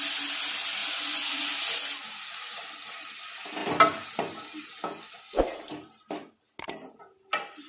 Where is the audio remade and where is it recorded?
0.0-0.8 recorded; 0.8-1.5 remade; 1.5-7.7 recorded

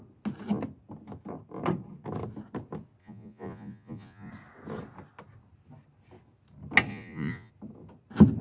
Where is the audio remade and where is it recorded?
0.0-3.0 recorded; 3.0-4.3 remade; 4.3-6.9 recorded; 6.9-7.5 remade; 7.5-8.4 recorded

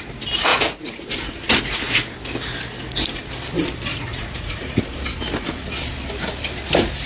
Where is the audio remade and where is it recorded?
0.0-0.5 recorded; 0.5-1.1 remade; 1.1-3.9 recorded; 3.9-4.8 remade; 4.8-7.1 recorded

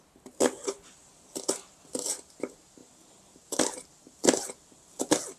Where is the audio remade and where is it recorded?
0.0-5.4 recorded

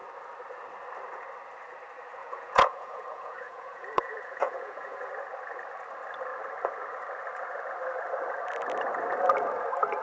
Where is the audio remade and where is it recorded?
0.0-2.2 recorded; 2.2-5.1 remade; 5.1-10.0 recorded

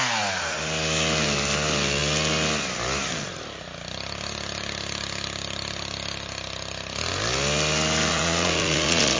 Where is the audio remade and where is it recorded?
0.0-8.1 recorded; 8.1-9.2 remade

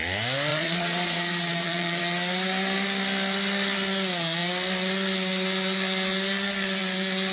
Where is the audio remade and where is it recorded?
0.0-0.5 recorded; 0.5-2.0 remade; 2.0-7.3 recorded

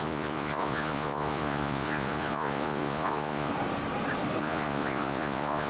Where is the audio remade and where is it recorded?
0.0-3.5 remade; 3.5-4.4 recorded; 4.4-5.7 remade